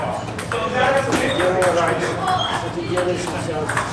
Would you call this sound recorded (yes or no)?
yes